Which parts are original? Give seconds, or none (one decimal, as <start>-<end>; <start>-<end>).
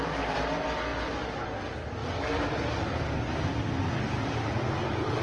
0.0-5.2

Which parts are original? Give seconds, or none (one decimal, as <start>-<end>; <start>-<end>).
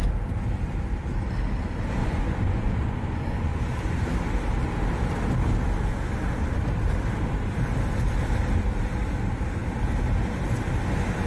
0.0-2.0; 3.6-11.3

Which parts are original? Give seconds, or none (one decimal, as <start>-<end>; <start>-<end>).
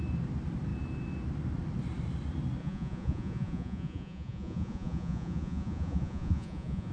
0.0-2.6